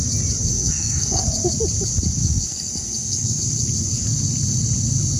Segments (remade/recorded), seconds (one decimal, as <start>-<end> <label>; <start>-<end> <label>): 0.0-0.5 recorded; 0.5-1.2 remade; 1.2-2.2 recorded; 2.2-3.4 remade; 3.4-5.2 recorded